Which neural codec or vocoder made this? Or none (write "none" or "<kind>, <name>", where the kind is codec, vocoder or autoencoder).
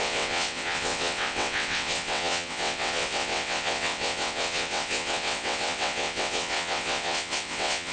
vocoder, WaveNeXt